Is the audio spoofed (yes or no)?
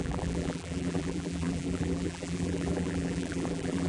yes